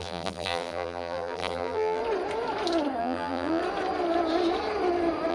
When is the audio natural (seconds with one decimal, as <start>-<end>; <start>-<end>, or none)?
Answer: 2.0-3.0; 3.6-5.3